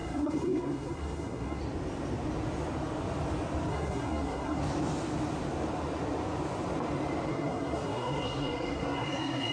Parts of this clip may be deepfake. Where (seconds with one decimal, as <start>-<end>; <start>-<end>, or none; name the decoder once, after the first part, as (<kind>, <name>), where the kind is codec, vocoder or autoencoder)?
0.0-1.6 (codec, SNAC); 3.7-4.6; 7.3-9.5